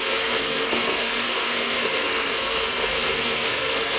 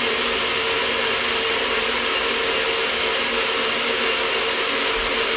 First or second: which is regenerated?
first